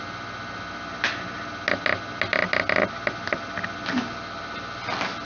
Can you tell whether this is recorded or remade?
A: recorded